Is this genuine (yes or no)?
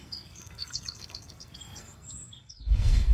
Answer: no